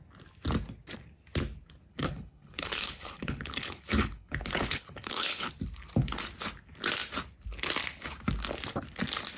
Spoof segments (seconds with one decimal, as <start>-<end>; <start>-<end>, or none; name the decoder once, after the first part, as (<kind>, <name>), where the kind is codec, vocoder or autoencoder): 1.9-5.5 (codec, HILCodec)